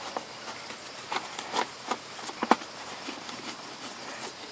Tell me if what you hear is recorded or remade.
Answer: recorded